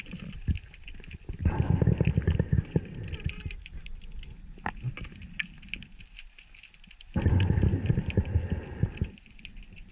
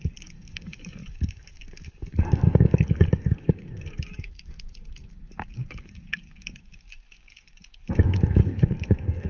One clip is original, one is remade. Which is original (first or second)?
first